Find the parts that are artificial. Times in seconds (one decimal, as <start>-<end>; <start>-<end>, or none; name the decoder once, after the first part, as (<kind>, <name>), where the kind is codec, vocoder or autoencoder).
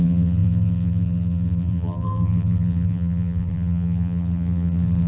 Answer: 0.0-5.1 (vocoder, BigVGAN v2)